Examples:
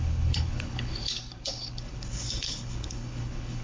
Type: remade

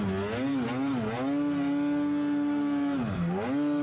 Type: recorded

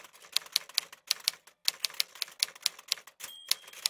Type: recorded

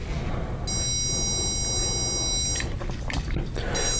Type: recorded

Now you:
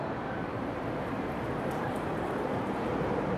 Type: remade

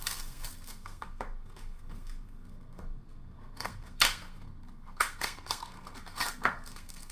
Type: remade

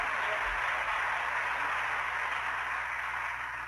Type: recorded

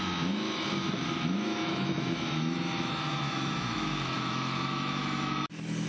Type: remade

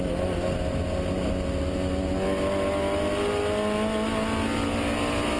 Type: recorded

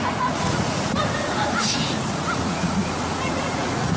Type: remade